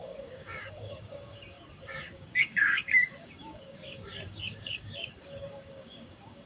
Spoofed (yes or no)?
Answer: yes